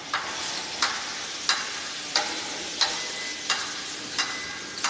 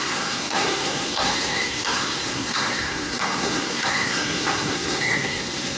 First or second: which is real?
first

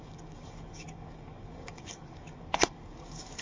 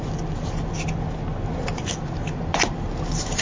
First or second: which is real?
second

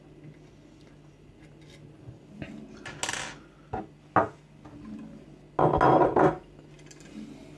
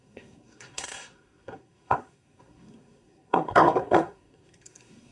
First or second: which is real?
first